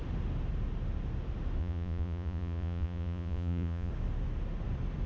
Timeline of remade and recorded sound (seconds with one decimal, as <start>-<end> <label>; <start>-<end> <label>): 0.0-1.6 recorded; 1.6-3.9 remade; 3.9-5.1 recorded